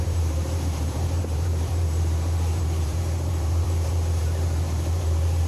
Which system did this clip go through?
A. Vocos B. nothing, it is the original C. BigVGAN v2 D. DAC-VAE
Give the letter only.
C